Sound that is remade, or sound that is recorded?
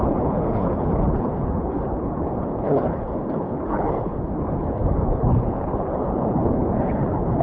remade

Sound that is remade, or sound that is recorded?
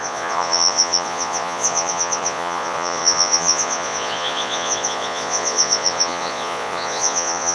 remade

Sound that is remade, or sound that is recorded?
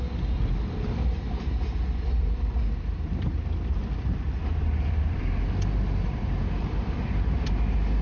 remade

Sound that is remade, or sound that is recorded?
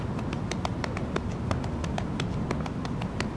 recorded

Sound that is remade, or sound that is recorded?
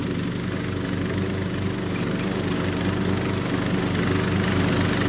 recorded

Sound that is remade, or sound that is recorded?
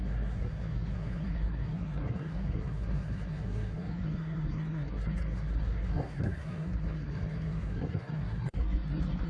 remade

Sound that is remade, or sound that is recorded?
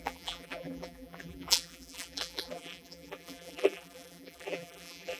remade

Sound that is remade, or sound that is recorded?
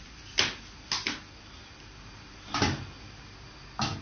recorded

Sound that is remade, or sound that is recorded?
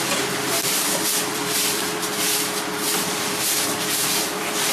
remade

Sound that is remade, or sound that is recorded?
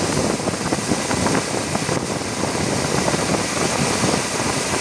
recorded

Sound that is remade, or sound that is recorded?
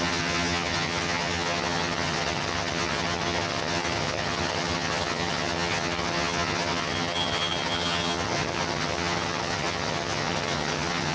remade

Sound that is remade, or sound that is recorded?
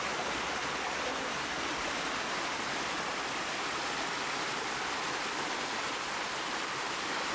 recorded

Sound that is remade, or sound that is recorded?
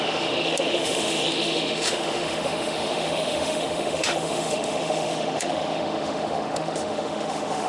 remade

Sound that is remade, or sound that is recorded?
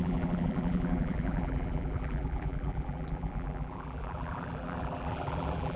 remade